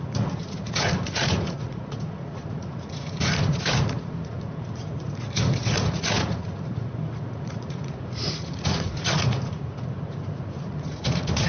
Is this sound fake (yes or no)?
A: yes